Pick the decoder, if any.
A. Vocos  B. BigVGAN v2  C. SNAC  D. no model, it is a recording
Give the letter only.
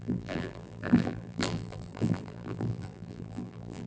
B